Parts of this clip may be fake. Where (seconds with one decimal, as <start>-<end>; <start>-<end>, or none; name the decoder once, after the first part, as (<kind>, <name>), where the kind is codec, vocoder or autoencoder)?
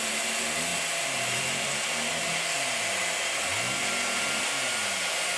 none